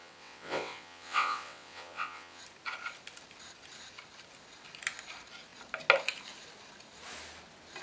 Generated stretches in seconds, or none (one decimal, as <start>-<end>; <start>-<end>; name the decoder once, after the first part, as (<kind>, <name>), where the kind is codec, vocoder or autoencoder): 0.0-2.4 (vocoder, WaveNeXt)